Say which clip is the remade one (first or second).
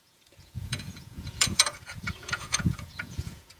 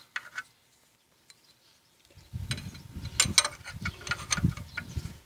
first